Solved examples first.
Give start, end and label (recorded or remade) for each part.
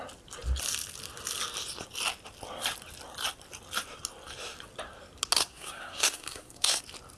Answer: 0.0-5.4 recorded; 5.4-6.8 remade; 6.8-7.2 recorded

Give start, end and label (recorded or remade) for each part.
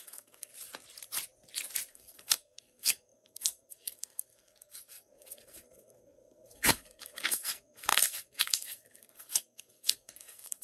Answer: 0.0-0.5 remade; 0.5-1.9 recorded; 1.9-10.6 remade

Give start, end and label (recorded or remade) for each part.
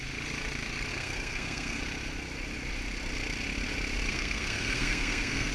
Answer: 0.0-0.9 recorded; 0.9-1.8 remade; 1.8-4.1 recorded; 4.1-5.5 remade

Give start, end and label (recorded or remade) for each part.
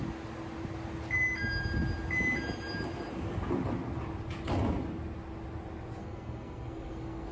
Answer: 0.0-6.0 recorded; 6.0-7.3 remade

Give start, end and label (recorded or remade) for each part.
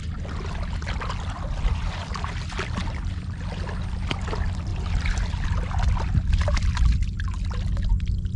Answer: 0.0-8.4 recorded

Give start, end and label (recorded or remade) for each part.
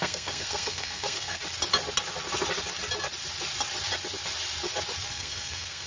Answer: 0.0-1.4 remade; 1.4-5.1 recorded; 5.1-5.9 remade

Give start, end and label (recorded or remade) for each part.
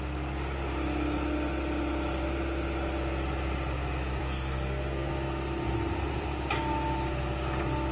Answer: 0.0-4.2 recorded; 4.2-5.1 remade; 5.1-7.9 recorded